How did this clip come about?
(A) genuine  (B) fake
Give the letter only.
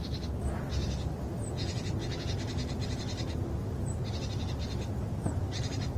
A